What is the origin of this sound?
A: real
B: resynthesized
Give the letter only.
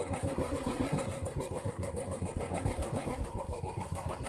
B